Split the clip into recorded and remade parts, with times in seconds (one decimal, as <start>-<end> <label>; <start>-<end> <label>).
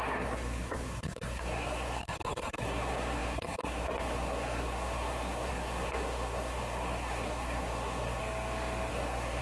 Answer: 0.0-8.2 remade; 8.2-8.9 recorded; 8.9-9.4 remade